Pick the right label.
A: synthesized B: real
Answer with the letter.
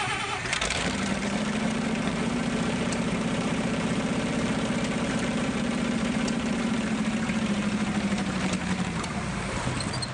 A